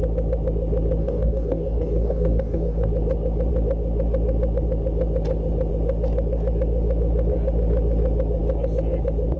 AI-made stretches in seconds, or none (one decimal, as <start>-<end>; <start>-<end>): 1.0-2.9